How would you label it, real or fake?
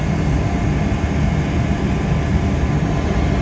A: real